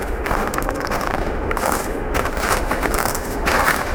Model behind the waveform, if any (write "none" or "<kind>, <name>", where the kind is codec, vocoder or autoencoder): autoencoder, DAC-VAE